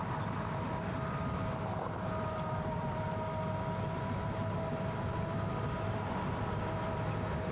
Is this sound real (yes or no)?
yes